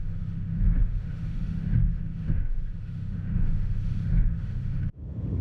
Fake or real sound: fake